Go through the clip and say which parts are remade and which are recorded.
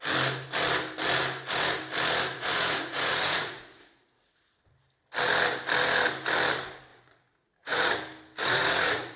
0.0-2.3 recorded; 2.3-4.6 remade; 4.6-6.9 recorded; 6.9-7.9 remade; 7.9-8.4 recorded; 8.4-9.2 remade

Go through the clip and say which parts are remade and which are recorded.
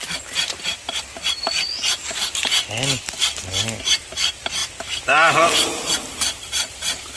0.0-7.2 recorded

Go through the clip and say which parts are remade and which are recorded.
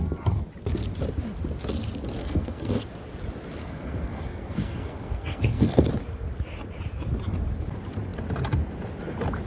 0.0-2.2 recorded; 2.2-2.8 remade; 2.8-3.6 recorded; 3.6-5.9 remade; 5.9-9.5 recorded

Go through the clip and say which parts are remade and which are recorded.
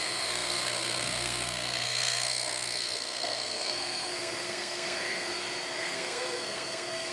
0.0-5.3 remade; 5.3-5.8 recorded; 5.8-7.1 remade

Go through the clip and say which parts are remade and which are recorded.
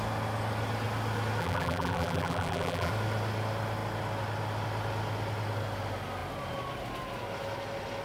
0.0-1.4 recorded; 1.4-2.9 remade; 2.9-8.0 recorded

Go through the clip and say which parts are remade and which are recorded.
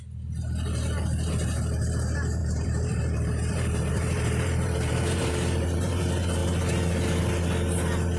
0.0-2.4 recorded; 2.4-6.0 remade; 6.0-8.2 recorded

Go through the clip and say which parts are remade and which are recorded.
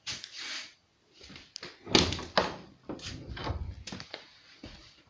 0.0-0.9 remade; 0.9-4.0 recorded; 4.0-5.1 remade